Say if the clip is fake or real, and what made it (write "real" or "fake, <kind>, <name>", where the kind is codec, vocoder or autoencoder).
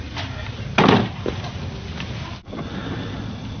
real